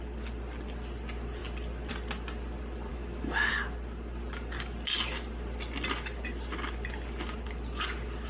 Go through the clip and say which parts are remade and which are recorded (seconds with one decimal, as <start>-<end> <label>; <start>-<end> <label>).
0.0-2.9 recorded; 2.9-3.5 remade; 3.5-8.3 recorded